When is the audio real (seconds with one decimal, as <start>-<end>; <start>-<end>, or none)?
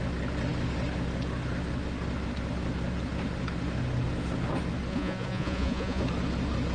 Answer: 0.0-4.9; 6.0-6.7